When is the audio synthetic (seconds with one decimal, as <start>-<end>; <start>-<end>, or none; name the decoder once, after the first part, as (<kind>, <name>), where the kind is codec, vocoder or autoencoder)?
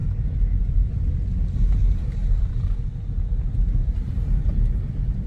0.6-2.2 (vocoder, BigVGAN v2); 3.1-5.3